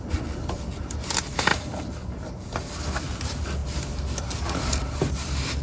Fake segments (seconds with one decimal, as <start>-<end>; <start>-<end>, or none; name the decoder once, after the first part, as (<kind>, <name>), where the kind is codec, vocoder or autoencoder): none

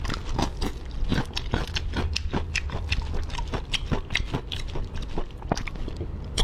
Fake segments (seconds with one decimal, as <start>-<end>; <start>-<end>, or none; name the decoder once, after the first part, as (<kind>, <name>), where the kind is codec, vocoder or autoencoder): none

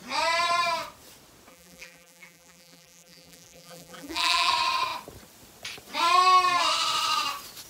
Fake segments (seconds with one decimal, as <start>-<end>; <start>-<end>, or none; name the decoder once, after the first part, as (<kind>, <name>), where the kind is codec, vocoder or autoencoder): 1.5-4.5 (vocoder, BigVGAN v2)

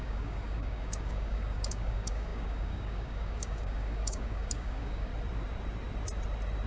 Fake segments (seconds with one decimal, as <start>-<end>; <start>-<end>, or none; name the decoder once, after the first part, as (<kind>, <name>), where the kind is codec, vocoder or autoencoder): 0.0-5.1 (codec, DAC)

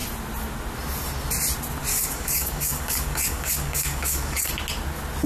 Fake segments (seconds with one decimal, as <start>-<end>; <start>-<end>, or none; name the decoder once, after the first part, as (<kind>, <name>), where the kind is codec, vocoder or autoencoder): 1.9-4.5 (codec, DAC)

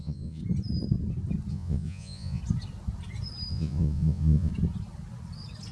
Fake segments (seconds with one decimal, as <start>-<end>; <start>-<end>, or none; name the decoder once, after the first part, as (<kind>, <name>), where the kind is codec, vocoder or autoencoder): 0.0-0.4 (vocoder, Vocos); 1.5-2.4; 3.5-4.5

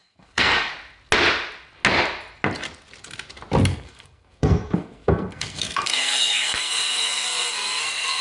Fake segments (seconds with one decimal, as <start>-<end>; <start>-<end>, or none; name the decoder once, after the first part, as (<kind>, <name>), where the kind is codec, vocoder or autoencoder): 0.0-0.7 (codec, SNAC); 3.7-8.2

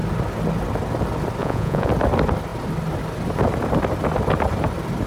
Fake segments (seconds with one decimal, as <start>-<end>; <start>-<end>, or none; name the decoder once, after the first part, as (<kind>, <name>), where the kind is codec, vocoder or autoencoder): 1.4-1.9 (vocoder, Vocos)